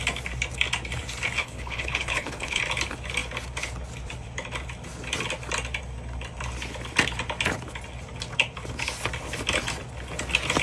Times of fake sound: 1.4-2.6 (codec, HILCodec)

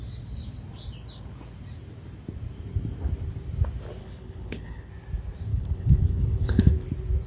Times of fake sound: 4.0-4.9 (codec, HILCodec); 5.5-6.7

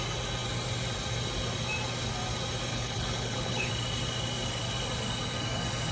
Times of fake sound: 2.7-3.7 (codec, HILCodec)

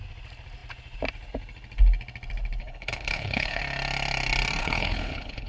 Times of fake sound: 2.6-3.6 (codec, HILCodec); 4.6-5.5

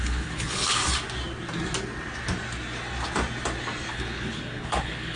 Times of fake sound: 0.0-0.8 (codec, HILCodec); 3.9-5.2